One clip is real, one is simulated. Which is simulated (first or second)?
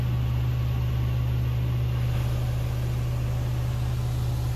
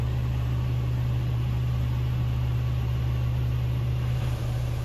second